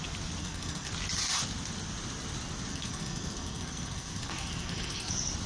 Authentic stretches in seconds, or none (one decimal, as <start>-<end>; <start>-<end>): 0.0-0.4; 0.9-2.7; 5.1-5.5

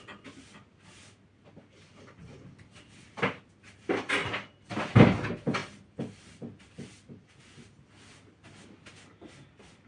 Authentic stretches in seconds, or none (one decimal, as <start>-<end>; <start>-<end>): 0.0-4.2; 4.9-5.6; 7.4-9.9

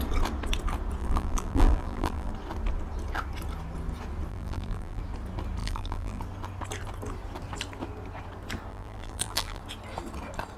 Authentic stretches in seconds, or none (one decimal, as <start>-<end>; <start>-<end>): 0.0-1.0; 2.3-4.3; 5.0-5.6; 6.2-8.7; 9.6-10.6

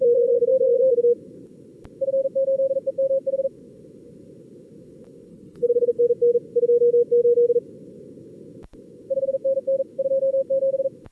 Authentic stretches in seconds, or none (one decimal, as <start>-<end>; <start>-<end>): 0.0-5.3; 6.0-11.1

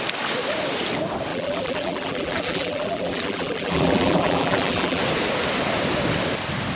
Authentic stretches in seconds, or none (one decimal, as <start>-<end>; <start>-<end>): 0.0-1.3; 5.0-6.8

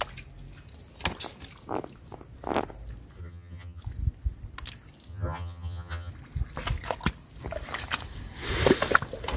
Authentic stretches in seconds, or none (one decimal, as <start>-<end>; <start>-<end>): 0.0-3.2; 3.8-5.1; 6.1-9.4